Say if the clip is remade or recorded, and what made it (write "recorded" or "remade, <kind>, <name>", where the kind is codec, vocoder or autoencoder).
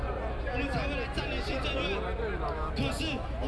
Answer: recorded